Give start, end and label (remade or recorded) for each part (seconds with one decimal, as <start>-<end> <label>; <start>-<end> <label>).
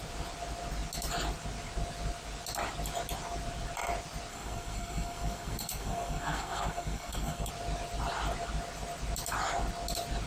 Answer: 0.0-4.3 recorded; 4.3-7.5 remade; 7.5-10.3 recorded